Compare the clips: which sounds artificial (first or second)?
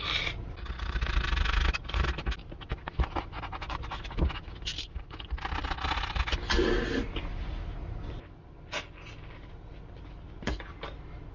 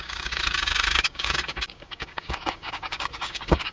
second